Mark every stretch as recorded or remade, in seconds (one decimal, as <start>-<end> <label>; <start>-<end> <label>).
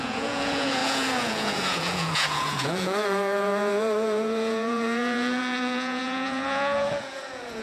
0.0-7.6 remade